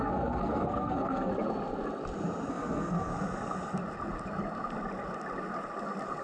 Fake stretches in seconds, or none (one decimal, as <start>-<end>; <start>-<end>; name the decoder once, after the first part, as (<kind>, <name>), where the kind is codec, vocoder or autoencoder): 0.0-1.3 (codec, SNAC); 2.5-3.1